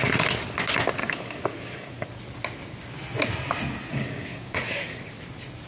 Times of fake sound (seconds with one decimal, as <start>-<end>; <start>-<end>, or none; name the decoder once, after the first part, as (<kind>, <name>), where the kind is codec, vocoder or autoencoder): 1.0-2.1 (codec, DAC); 3.9-5.1